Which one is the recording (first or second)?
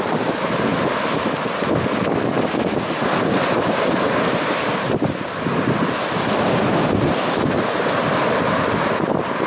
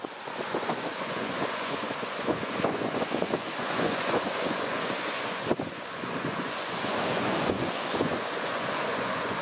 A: first